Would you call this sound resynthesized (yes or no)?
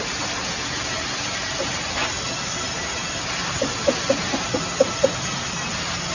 no